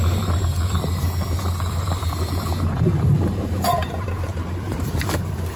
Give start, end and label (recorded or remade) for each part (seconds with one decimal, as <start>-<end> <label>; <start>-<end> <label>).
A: 0.0-5.6 remade